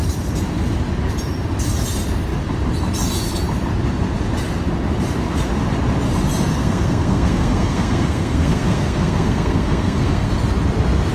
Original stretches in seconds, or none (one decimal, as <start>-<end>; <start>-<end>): 0.0-6.5; 10.3-11.1